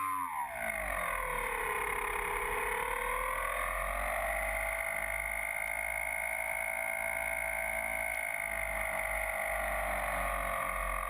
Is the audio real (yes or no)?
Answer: yes